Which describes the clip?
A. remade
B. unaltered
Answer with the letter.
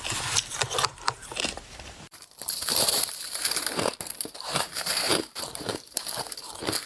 A